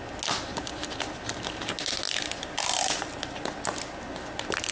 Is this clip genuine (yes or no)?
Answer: yes